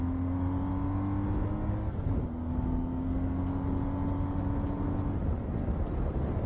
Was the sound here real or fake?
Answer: real